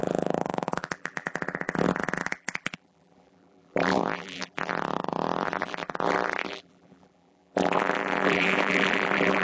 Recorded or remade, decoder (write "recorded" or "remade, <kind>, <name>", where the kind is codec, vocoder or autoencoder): remade, vocoder, BigVGAN v2